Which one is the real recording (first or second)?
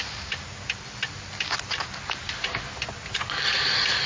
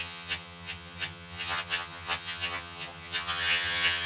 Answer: first